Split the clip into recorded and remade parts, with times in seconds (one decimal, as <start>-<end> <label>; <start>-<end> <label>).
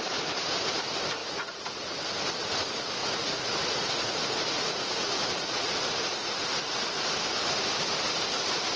0.0-1.2 recorded; 1.2-2.0 remade; 2.0-3.0 recorded; 3.0-7.1 remade; 7.1-8.8 recorded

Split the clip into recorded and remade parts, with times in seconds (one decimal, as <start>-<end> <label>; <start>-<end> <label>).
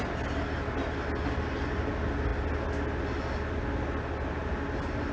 0.0-5.1 recorded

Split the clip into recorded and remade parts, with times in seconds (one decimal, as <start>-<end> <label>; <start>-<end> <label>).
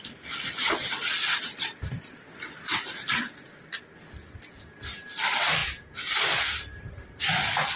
0.0-5.6 recorded; 5.6-6.1 remade; 6.1-7.8 recorded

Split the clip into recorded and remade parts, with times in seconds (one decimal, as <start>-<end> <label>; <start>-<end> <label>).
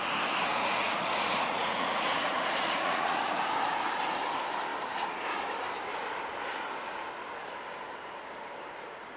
0.0-0.5 recorded; 0.5-3.3 remade; 3.3-9.2 recorded